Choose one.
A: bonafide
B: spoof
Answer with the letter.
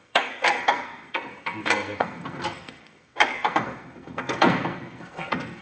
B